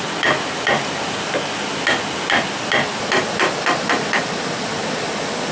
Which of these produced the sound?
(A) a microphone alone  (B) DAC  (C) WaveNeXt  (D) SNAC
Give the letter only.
A